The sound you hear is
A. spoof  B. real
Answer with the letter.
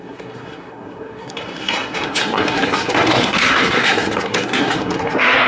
A